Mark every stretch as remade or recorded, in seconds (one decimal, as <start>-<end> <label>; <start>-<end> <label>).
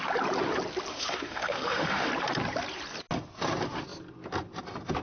0.0-0.9 recorded; 0.9-2.1 remade; 2.1-5.0 recorded